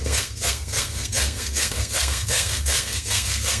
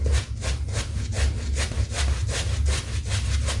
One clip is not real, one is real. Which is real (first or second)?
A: second